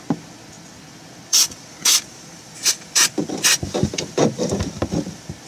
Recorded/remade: remade